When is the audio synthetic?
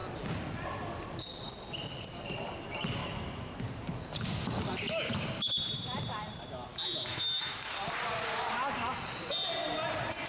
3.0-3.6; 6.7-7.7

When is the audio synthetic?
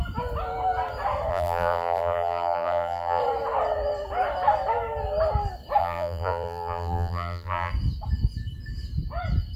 1.3-3.2; 5.8-7.7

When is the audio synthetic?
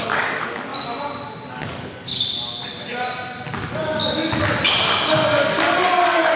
0.0-0.7; 1.5-2.1; 5.9-6.4